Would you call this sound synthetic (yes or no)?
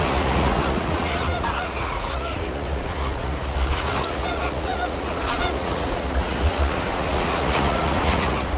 yes